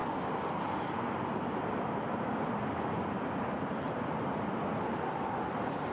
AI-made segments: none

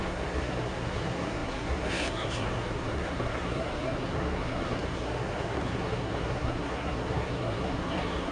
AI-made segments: 0.0-8.3

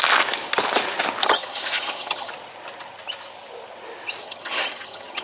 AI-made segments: 1.2-2.3; 4.2-5.2

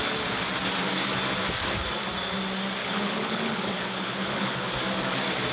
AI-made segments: 2.8-4.7

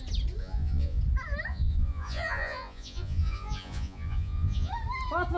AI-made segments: 0.4-1.0; 1.5-4.7

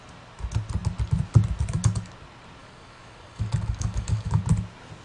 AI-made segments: 2.6-4.4

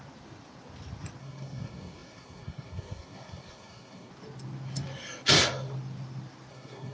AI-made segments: 1.2-4.1; 6.5-6.9

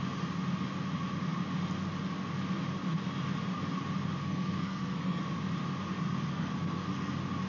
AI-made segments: 4.2-5.2; 6.3-7.1